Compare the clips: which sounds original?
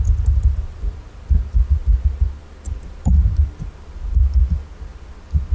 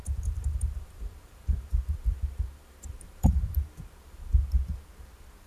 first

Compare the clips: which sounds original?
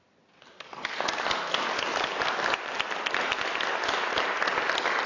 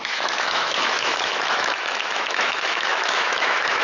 first